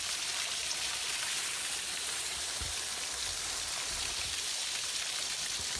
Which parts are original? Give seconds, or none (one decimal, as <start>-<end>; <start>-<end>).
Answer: 0.0-0.6; 3.0-5.8